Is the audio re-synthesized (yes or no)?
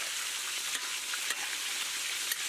no